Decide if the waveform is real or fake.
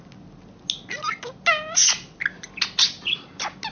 real